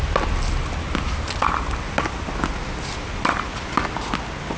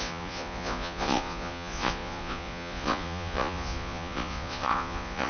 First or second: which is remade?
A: second